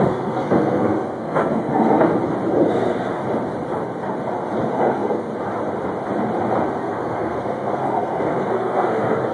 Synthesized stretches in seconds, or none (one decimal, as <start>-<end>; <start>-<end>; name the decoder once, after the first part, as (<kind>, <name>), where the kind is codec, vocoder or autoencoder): 0.0-2.1 (codec, SNAC); 2.7-3.2; 4.8-5.3; 6.8-9.3